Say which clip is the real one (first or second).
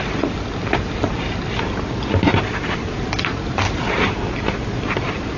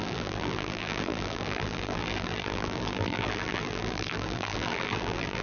first